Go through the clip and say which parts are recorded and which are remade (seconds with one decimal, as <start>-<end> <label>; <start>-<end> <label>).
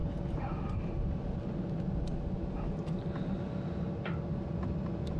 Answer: 0.0-0.7 remade; 0.7-5.2 recorded